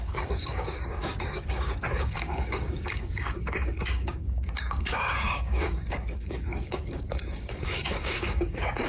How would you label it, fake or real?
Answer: fake